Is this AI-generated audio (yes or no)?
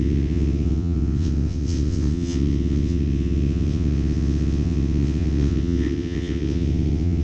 yes